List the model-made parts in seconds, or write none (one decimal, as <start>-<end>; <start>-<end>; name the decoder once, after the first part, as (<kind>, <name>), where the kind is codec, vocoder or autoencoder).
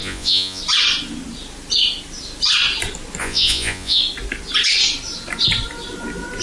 0.0-0.6 (vocoder, Vocos); 3.2-4.0